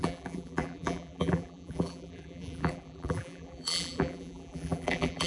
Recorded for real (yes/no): no